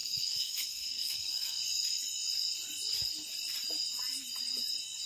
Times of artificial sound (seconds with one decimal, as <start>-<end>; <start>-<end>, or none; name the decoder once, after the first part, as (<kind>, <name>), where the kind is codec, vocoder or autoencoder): 0.0-1.6 (codec, SNAC)